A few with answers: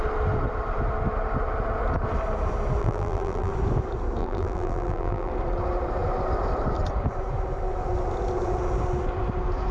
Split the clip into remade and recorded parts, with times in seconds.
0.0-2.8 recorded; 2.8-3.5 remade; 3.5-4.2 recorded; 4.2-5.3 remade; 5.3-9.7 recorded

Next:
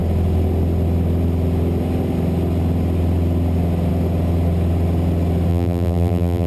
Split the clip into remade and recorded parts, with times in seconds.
0.0-5.5 recorded; 5.5-6.5 remade

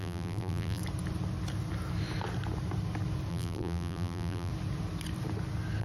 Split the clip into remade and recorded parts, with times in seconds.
0.0-0.8 remade; 0.8-3.3 recorded; 3.3-4.5 remade; 4.5-5.8 recorded

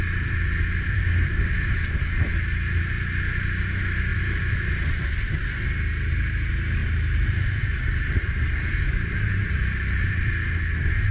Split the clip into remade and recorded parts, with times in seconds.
0.0-4.1 recorded; 4.1-4.7 remade; 4.7-6.8 recorded; 6.8-10.1 remade; 10.1-11.1 recorded

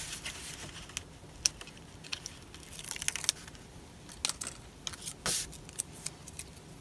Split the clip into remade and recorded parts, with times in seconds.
0.0-6.8 recorded

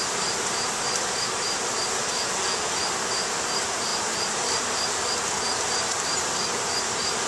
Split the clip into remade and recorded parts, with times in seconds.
0.0-2.0 remade; 2.0-2.8 recorded; 2.8-7.3 remade

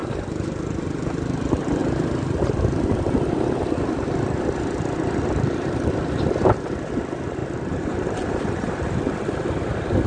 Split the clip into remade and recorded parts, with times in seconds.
0.0-7.4 recorded; 7.4-9.2 remade; 9.2-10.1 recorded

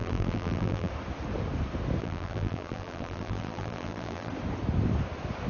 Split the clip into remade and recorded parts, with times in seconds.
0.0-0.9 remade; 0.9-2.0 recorded; 2.0-4.3 remade; 4.3-5.5 recorded